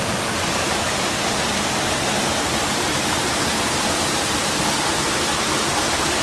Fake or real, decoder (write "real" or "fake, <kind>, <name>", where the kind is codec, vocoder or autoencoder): real